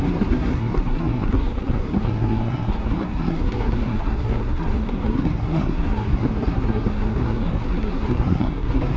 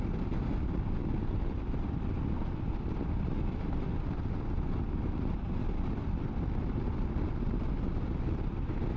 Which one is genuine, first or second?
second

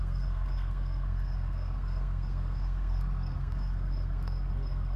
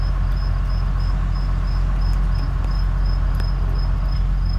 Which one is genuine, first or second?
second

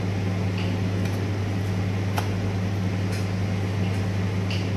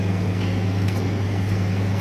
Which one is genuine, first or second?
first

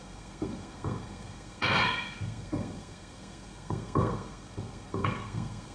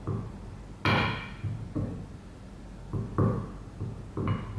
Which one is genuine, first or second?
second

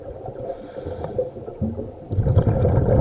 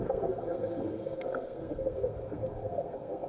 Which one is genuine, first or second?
first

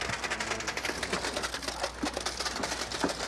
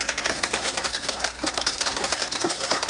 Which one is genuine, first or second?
first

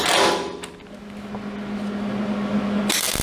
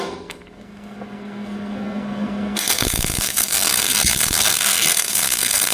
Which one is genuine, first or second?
first